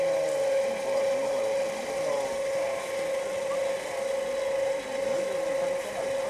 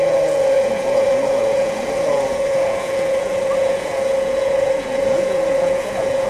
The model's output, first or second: second